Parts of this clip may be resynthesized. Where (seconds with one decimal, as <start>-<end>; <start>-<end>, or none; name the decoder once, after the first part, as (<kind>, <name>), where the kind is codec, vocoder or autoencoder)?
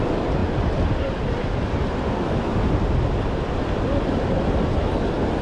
none